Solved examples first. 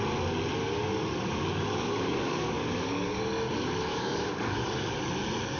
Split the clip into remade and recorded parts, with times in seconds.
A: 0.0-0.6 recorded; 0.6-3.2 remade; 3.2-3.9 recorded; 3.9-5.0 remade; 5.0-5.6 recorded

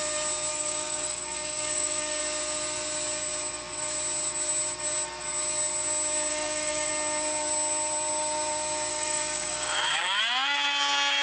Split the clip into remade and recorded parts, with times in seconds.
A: 0.0-0.5 recorded; 0.5-2.2 remade; 2.2-6.3 recorded; 6.3-6.9 remade; 6.9-8.9 recorded; 8.9-10.2 remade; 10.2-11.2 recorded

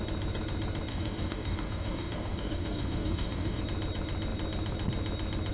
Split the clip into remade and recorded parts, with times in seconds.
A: 0.0-0.9 recorded; 0.9-3.6 remade; 3.6-5.5 recorded

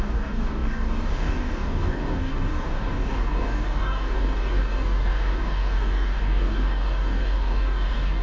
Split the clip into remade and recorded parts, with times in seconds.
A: 0.0-8.2 remade

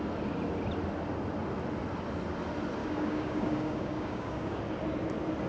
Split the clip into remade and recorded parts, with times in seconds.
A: 0.0-2.8 recorded; 2.8-4.6 remade; 4.6-5.5 recorded

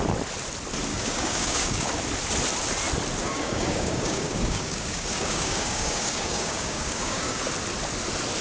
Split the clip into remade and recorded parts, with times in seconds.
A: 0.0-0.9 recorded; 0.9-1.9 remade; 1.9-3.2 recorded; 3.2-7.4 remade; 7.4-8.4 recorded

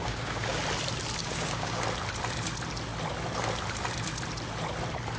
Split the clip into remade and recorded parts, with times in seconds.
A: 0.0-0.6 remade; 0.6-1.2 recorded; 1.2-1.8 remade; 1.8-5.2 recorded